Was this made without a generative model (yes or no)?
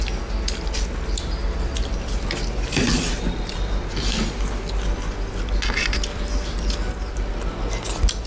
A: yes